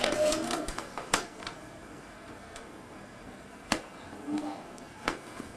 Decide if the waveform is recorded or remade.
remade